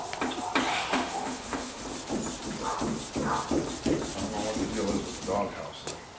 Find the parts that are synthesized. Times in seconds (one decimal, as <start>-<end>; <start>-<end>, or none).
0.7-1.8